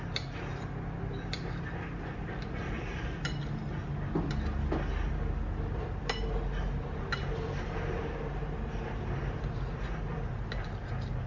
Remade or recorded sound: recorded